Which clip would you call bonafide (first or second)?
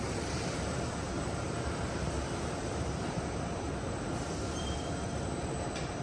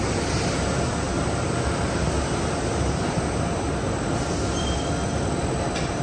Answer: second